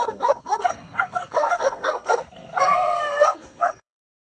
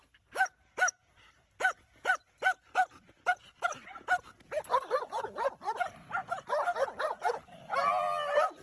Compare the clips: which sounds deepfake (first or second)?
first